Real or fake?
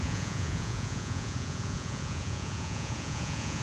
fake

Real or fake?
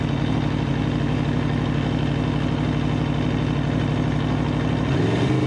real